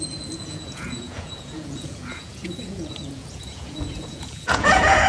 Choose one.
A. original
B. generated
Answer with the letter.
B